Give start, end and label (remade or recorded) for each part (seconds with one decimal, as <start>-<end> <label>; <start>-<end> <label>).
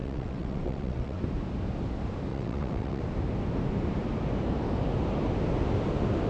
0.0-1.2 remade; 1.2-2.3 recorded; 2.3-3.0 remade; 3.0-6.3 recorded